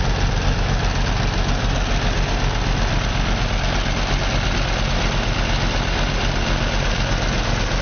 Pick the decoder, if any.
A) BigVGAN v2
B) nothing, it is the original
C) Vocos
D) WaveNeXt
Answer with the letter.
B